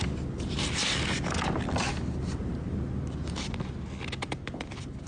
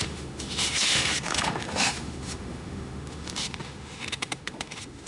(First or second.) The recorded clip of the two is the first